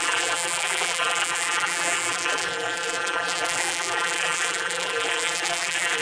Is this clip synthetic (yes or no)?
yes